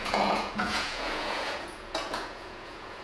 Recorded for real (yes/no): no